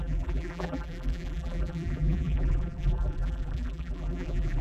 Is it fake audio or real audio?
fake